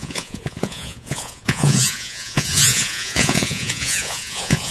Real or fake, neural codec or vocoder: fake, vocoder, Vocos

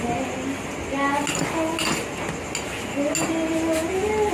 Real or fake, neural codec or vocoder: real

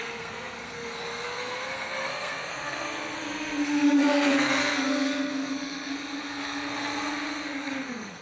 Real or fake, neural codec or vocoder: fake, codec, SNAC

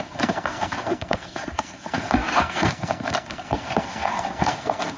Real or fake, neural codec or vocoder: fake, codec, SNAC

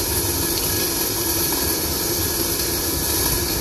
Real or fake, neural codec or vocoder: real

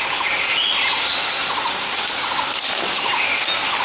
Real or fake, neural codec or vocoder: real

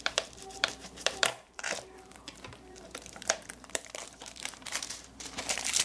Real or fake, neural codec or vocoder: fake, vocoder, BigVGAN v2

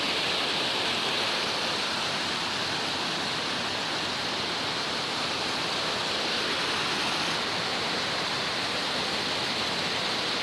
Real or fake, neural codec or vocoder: real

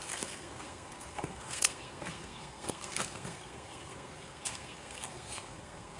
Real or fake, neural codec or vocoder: fake, codec, SNAC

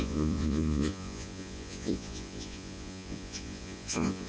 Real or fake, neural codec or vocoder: fake, vocoder, Vocos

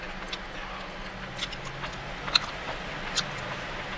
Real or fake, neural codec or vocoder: real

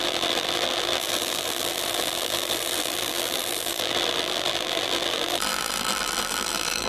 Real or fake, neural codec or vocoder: fake, vocoder, BigVGAN v2